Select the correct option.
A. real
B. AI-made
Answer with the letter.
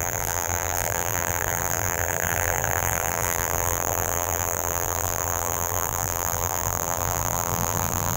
B